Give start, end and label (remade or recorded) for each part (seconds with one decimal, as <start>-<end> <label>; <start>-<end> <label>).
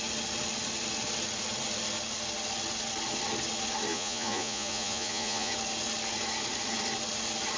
0.0-3.9 recorded; 3.9-5.5 remade; 5.5-7.6 recorded